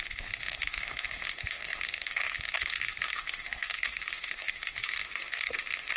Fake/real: fake